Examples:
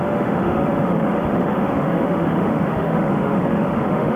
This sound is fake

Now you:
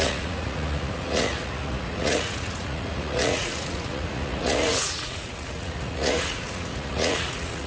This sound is fake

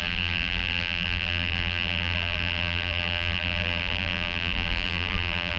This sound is fake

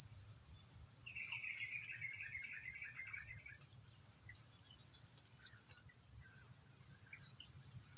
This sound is real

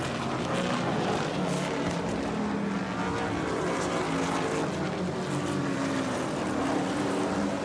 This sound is real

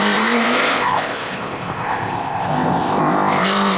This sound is fake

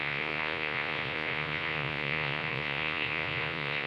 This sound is fake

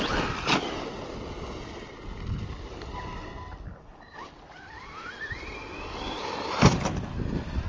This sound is real